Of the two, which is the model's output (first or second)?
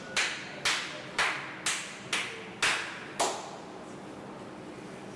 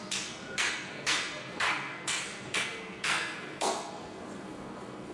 second